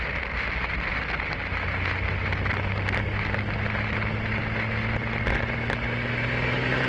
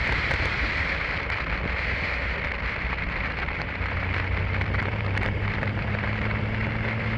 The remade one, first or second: second